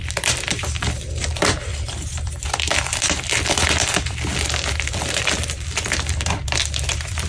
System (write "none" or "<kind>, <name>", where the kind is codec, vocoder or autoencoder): vocoder, BigVGAN v2